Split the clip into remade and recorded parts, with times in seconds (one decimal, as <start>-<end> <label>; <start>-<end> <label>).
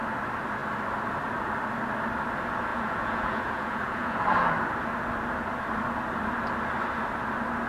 0.0-2.7 recorded; 2.7-4.2 remade; 4.2-7.7 recorded